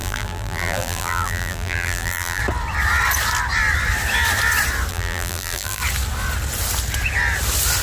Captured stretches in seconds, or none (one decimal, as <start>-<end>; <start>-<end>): 2.4-4.9; 5.8-7.8